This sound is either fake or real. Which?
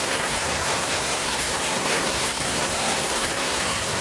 fake